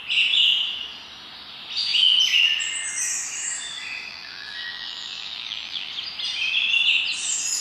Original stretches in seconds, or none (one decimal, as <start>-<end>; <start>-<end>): 0.0-4.1; 5.9-7.6